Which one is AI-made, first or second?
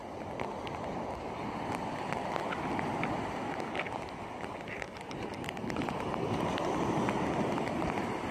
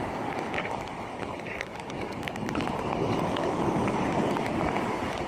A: second